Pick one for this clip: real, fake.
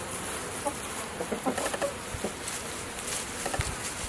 real